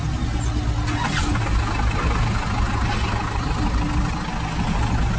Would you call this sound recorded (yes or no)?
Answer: yes